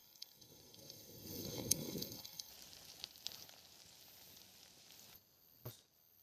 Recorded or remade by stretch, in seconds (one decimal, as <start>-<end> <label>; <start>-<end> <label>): 0.0-2.5 remade; 2.5-6.2 recorded